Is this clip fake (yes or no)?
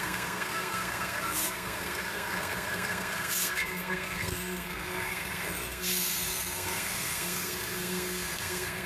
yes